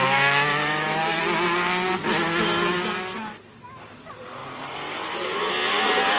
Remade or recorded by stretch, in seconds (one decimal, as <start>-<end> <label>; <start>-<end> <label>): 0.0-1.2 remade; 1.2-6.2 recorded